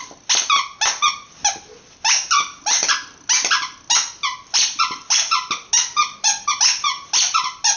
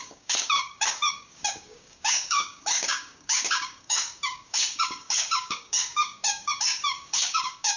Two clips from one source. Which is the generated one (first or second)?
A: second